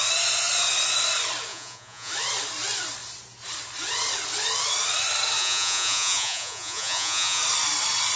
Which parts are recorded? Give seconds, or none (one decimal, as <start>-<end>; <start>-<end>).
0.0-1.5; 2.1-5.4; 7.4-8.2